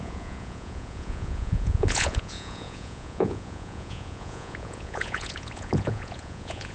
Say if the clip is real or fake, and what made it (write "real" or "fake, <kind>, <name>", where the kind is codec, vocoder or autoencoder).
fake, vocoder, Vocos